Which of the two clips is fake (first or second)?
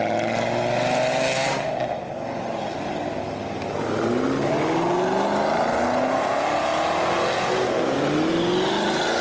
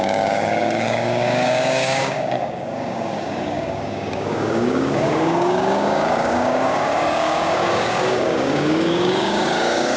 second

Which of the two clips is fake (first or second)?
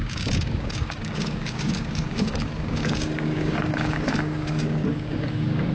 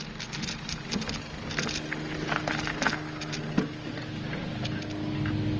first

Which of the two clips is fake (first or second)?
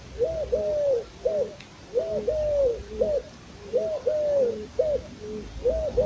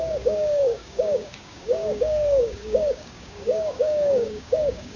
second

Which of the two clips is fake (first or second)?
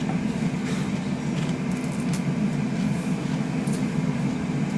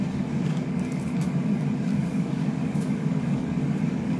second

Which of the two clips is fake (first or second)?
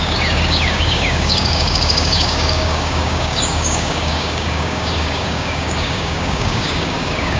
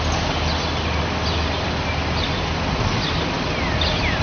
first